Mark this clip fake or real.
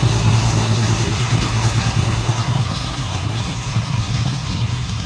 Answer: fake